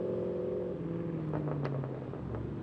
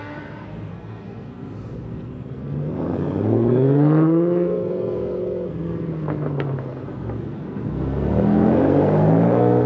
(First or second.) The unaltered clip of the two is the first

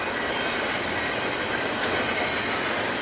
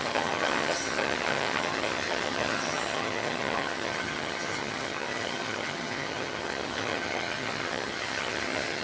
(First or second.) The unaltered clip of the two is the first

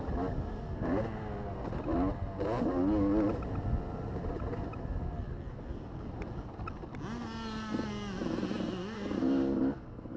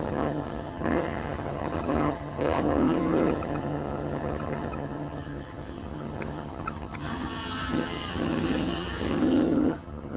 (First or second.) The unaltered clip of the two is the first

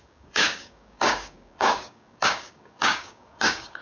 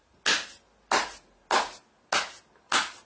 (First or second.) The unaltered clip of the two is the second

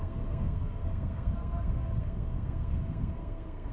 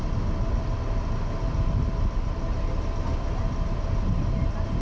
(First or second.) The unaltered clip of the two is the second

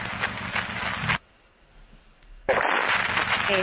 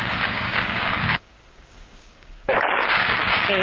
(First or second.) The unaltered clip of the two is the first